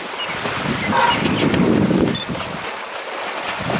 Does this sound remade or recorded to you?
recorded